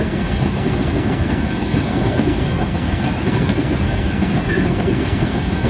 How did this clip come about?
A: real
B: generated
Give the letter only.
B